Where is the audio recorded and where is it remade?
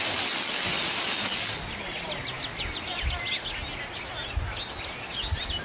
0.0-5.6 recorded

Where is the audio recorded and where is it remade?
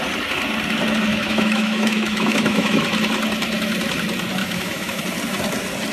0.0-1.1 recorded; 1.1-2.8 remade; 2.8-4.4 recorded; 4.4-5.0 remade; 5.0-5.9 recorded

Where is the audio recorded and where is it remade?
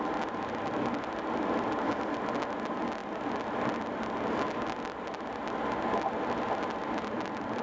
0.0-7.6 recorded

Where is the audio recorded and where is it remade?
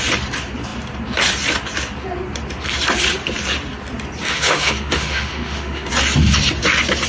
0.0-4.2 recorded; 4.2-5.9 remade; 5.9-7.1 recorded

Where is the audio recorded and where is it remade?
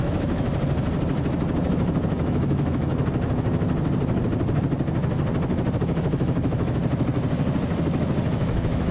0.0-0.5 remade; 0.5-1.7 recorded; 1.7-2.9 remade; 2.9-5.8 recorded; 5.8-6.8 remade; 6.8-8.3 recorded; 8.3-8.9 remade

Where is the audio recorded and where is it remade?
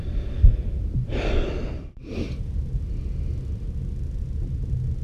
0.0-5.0 recorded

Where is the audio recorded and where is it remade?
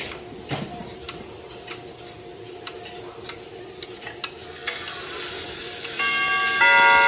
0.0-7.1 recorded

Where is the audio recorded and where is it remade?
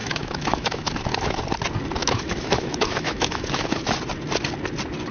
0.0-1.4 remade; 1.4-2.0 recorded; 2.0-3.9 remade; 3.9-5.1 recorded